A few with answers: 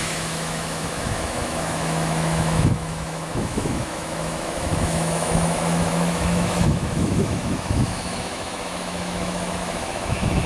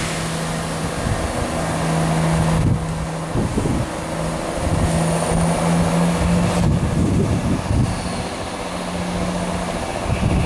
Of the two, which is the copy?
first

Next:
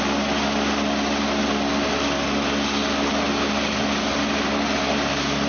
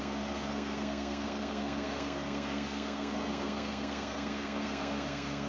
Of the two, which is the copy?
second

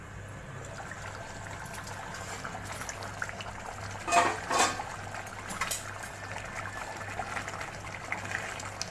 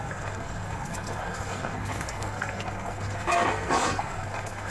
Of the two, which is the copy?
second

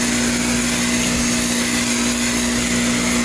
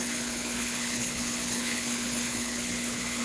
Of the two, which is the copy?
second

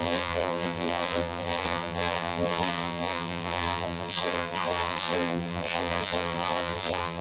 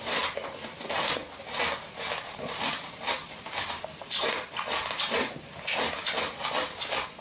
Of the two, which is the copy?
first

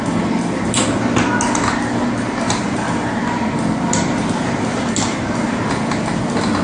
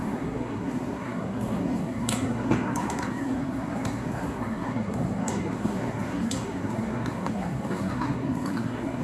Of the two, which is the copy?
second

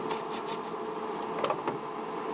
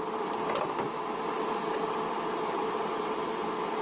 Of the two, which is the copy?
second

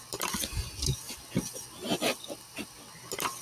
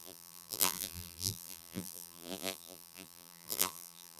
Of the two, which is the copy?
second